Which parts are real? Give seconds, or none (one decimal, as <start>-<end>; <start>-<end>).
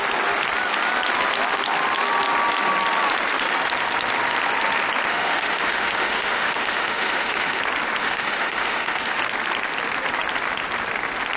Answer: 0.0-5.1; 7.6-8.0; 9.2-11.4